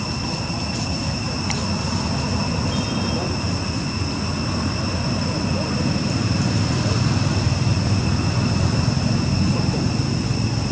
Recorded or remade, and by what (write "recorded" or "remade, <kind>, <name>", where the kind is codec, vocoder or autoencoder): recorded